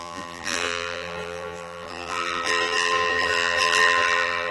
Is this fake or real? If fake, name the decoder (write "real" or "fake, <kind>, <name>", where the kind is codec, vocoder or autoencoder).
fake, vocoder, BigVGAN v2